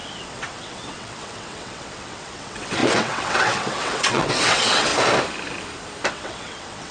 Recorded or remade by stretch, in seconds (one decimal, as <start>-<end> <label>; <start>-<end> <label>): 0.0-4.9 remade; 4.9-6.1 recorded; 6.1-6.9 remade